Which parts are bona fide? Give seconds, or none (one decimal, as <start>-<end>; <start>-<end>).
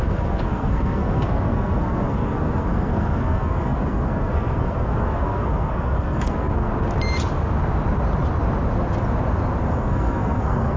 6.7-9.7